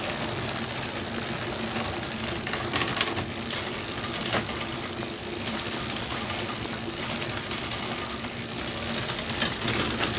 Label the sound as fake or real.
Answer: real